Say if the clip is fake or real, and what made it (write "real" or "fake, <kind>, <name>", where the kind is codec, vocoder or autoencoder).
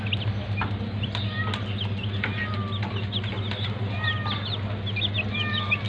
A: real